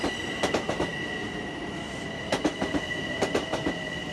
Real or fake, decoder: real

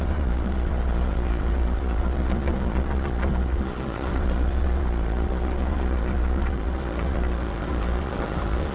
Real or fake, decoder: fake, vocoder, Vocos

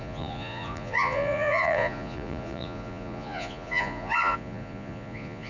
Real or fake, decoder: fake, vocoder, Vocos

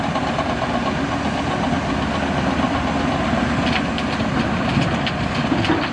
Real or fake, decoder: real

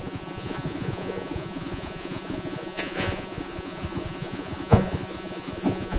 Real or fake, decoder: fake, vocoder, Vocos